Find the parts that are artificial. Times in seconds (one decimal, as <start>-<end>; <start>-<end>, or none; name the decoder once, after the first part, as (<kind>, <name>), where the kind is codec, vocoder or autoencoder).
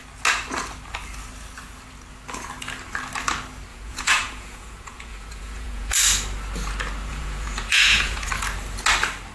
3.7-5.9 (vocoder, Vocos); 7.1-8.3